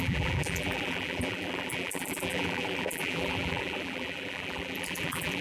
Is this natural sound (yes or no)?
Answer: no